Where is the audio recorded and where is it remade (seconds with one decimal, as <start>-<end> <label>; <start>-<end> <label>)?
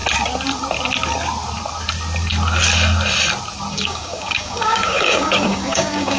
0.0-3.7 recorded; 3.7-6.2 remade